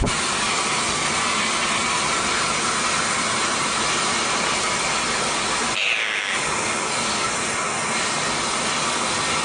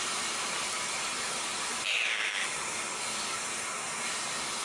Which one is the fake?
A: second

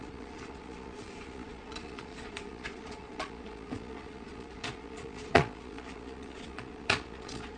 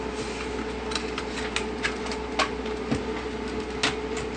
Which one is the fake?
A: first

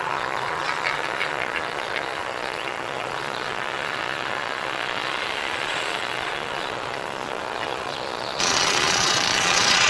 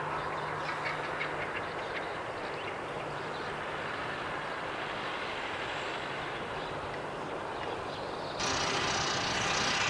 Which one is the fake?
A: first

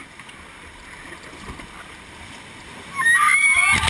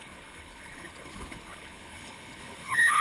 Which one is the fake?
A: second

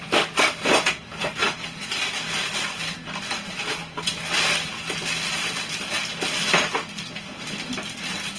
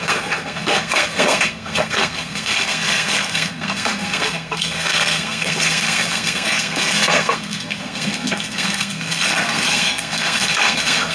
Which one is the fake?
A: second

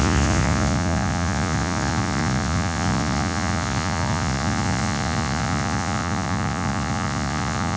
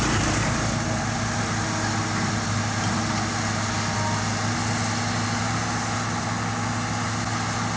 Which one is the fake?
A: first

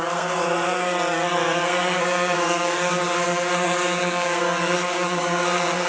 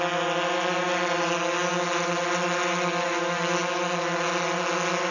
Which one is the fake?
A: first